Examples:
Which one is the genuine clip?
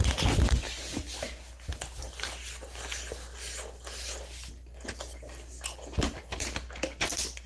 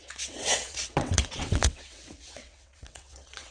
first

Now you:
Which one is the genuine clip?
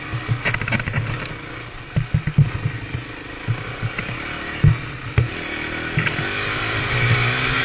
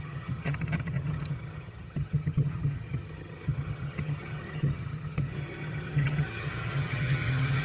first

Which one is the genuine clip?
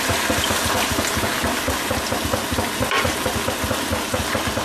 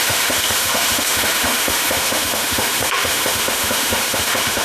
first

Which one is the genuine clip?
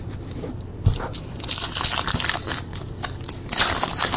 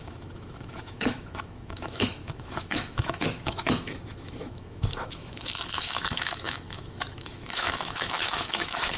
first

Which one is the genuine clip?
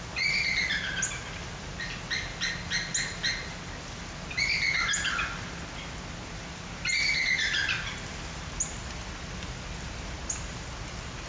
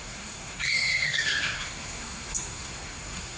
first